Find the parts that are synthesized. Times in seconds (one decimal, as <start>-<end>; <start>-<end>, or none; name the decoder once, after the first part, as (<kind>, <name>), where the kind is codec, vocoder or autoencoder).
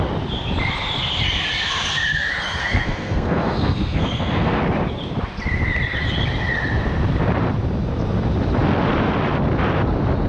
2.6-4.6 (codec, SNAC)